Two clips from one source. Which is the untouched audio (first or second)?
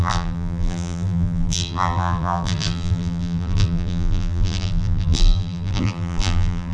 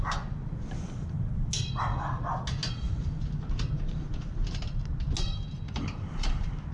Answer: second